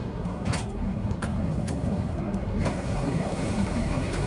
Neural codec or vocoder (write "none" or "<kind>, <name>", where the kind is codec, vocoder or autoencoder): codec, SNAC